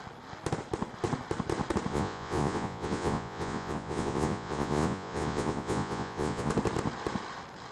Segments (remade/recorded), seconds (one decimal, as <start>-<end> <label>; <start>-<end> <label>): 0.0-1.9 recorded; 1.9-6.5 remade; 6.5-7.7 recorded